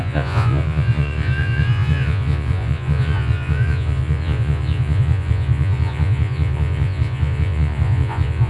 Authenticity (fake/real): fake